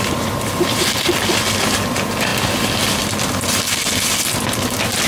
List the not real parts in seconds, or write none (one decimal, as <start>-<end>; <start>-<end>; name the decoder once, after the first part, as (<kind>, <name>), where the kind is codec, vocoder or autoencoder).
none